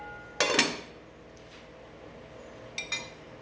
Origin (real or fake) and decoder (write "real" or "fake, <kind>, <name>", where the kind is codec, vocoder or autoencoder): real